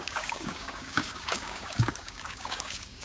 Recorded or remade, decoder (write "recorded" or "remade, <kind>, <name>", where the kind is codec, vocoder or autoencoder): remade, codec, DAC